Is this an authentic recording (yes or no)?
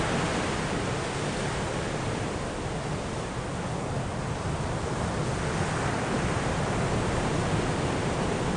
yes